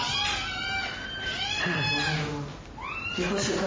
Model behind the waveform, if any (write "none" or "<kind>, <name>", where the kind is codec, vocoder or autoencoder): none